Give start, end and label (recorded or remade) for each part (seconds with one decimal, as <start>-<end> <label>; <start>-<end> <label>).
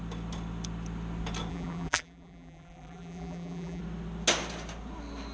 0.0-1.5 recorded; 1.5-3.8 remade; 3.8-5.3 recorded